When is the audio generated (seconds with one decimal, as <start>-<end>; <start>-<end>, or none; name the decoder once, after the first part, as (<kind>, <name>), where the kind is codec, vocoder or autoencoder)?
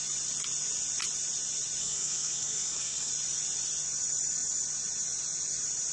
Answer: 1.8-3.1 (codec, SNAC)